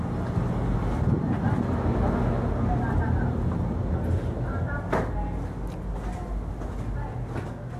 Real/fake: real